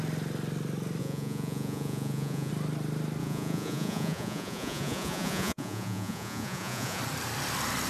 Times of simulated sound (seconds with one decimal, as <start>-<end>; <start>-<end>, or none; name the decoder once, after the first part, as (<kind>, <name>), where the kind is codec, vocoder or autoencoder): 1.0-2.5 (vocoder, Vocos); 3.2-7.0